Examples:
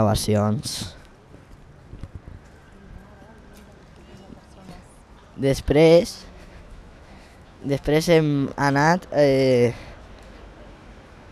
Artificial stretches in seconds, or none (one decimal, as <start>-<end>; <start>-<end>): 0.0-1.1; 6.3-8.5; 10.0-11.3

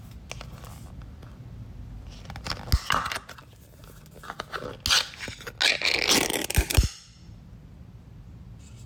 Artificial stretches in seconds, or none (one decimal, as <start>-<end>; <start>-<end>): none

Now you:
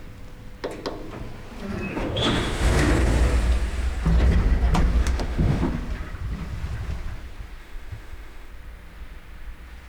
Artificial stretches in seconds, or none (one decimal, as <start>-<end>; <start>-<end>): 1.9-2.9; 5.0-5.7; 7.6-8.5